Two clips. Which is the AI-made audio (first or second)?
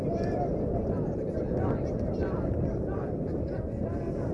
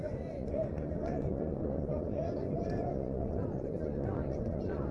second